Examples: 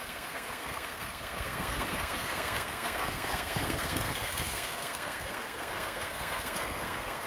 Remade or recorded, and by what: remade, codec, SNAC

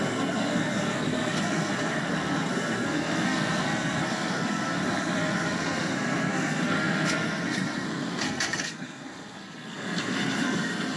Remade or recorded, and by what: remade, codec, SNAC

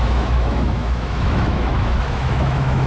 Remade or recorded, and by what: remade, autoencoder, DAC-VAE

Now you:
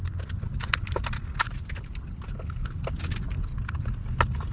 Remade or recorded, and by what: recorded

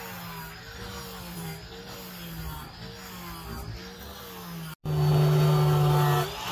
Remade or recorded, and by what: recorded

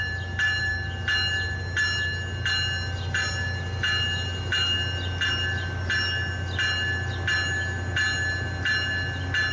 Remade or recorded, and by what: recorded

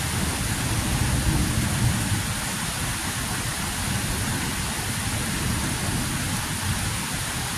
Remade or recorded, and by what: recorded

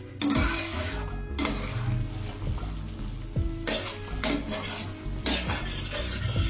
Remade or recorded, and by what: recorded